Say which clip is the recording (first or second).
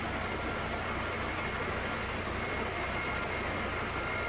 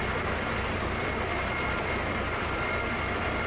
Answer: first